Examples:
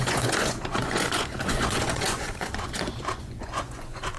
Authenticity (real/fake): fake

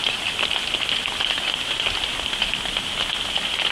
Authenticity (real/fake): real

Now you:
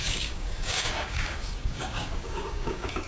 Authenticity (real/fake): fake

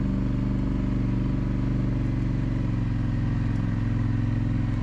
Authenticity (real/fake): real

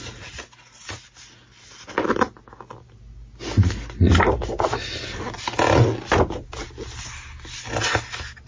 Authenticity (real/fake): real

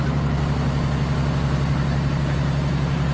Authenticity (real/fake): real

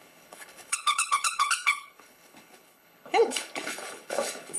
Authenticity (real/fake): fake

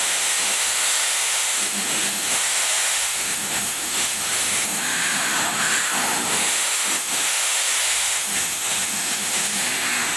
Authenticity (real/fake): fake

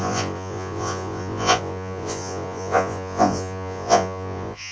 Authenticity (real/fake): fake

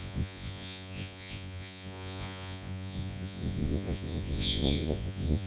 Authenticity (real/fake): fake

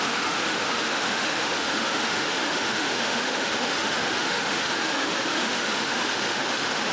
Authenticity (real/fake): fake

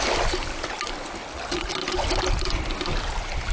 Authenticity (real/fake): real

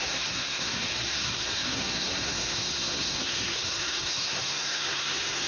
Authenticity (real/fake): fake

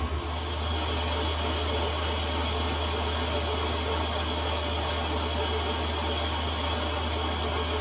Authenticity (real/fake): real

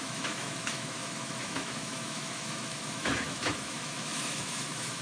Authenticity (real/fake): fake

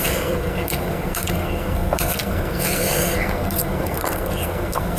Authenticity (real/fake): fake